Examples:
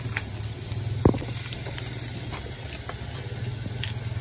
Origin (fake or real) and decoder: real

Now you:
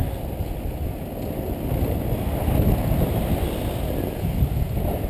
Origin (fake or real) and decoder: real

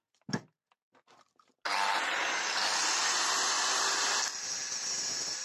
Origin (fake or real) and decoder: real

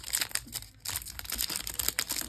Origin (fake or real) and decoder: real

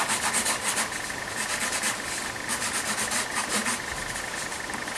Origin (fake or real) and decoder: real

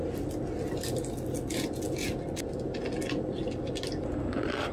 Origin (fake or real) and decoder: real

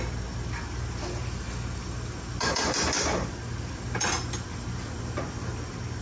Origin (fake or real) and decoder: real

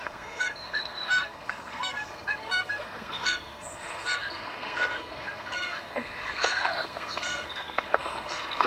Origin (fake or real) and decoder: fake, codec, SNAC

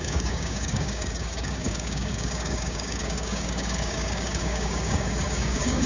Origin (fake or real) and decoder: fake, codec, DAC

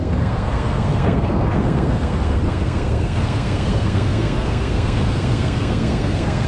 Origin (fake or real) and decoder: fake, codec, SNAC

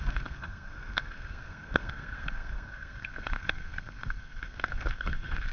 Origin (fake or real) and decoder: fake, codec, SNAC